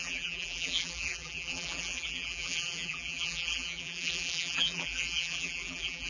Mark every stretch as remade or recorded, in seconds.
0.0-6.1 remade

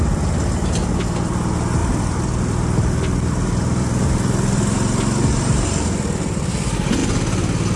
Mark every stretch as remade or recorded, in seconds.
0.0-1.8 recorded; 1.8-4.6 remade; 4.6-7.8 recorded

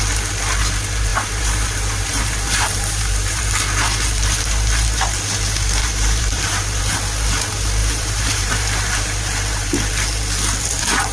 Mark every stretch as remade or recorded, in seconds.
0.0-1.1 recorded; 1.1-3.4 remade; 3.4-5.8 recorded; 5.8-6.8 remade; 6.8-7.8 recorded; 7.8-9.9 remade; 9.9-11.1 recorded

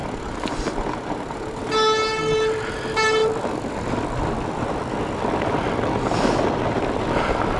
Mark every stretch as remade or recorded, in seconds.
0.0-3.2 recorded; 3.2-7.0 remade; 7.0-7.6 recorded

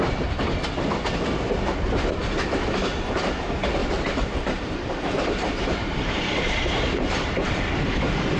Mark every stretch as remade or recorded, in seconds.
0.0-3.8 recorded; 3.8-7.7 remade; 7.7-8.4 recorded

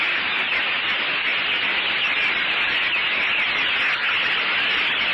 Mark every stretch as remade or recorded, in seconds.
0.0-5.1 recorded

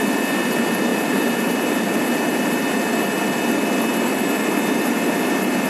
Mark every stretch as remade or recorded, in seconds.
0.0-0.9 recorded; 0.9-2.9 remade; 2.9-5.7 recorded